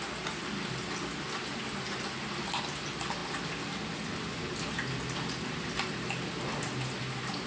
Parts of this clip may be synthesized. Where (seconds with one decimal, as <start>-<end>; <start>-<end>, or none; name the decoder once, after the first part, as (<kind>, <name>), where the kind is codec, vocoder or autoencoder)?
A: none